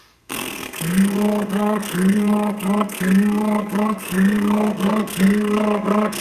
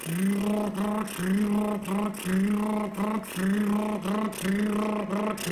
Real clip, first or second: second